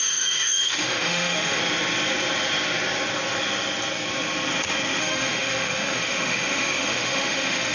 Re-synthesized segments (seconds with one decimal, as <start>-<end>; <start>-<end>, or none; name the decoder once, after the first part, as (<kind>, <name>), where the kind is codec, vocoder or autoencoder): 0.0-1.6 (autoencoder, DAC-VAE); 5.0-7.7